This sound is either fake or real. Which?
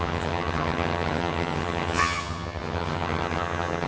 fake